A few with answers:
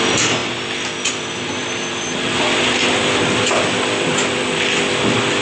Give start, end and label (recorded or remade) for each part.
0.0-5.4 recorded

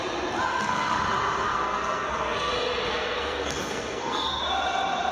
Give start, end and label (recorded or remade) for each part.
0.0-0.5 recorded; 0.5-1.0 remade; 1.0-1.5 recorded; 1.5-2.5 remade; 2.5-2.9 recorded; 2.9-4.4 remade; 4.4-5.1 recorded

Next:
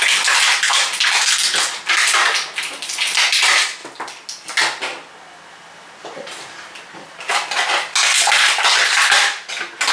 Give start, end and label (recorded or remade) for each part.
0.0-9.9 recorded

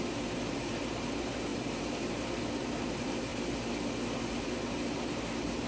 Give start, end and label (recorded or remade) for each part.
0.0-3.3 remade; 3.3-4.4 recorded; 4.4-5.7 remade

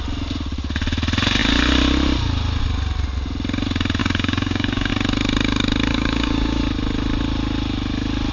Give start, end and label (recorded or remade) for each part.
0.0-4.0 recorded; 4.0-4.9 remade; 4.9-5.9 recorded; 5.9-6.6 remade; 6.6-8.3 recorded

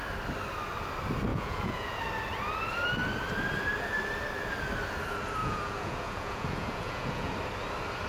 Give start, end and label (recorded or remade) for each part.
0.0-1.3 recorded; 1.3-2.0 remade; 2.0-5.4 recorded; 5.4-7.3 remade; 7.3-8.1 recorded